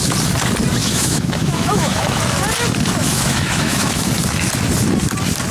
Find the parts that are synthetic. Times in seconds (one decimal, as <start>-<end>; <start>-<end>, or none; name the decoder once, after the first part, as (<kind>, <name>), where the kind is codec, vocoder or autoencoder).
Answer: 0.8-2.2 (autoencoder, DAC-VAE); 3.0-4.1